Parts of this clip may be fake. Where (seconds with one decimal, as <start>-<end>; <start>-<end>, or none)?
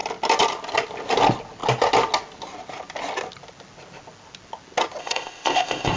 5.0-6.0